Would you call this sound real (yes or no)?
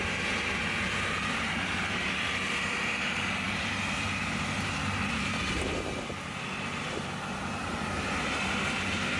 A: yes